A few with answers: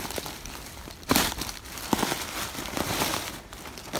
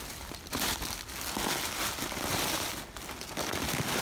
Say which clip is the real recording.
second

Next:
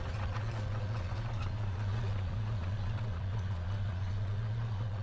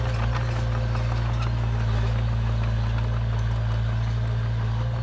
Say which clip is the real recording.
second